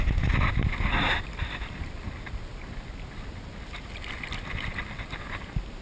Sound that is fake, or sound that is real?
real